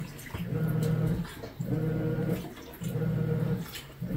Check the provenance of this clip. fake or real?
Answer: real